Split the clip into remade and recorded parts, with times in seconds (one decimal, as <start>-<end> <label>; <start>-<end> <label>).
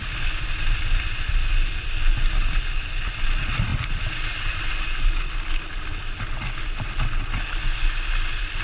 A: 0.0-8.6 recorded